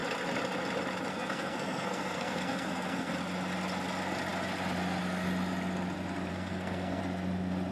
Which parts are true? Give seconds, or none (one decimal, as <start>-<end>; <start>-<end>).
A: 0.0-1.1; 3.1-6.3; 7.0-7.7

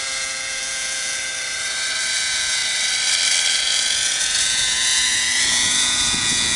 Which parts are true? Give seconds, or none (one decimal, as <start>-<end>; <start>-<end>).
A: 1.3-2.2; 2.6-3.5